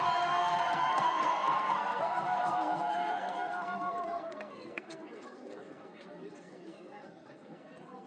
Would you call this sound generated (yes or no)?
yes